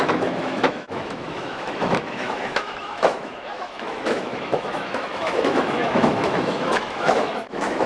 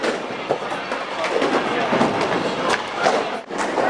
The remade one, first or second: first